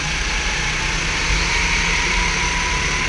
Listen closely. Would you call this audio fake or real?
real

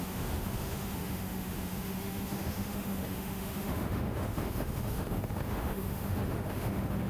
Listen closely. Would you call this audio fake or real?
fake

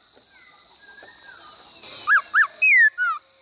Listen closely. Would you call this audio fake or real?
real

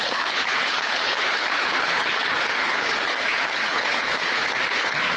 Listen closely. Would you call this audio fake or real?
fake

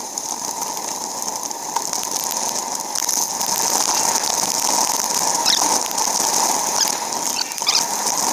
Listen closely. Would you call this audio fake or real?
real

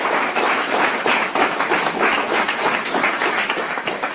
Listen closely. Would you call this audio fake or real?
fake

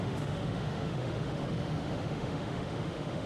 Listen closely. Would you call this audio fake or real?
fake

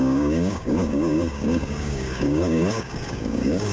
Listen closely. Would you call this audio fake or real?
fake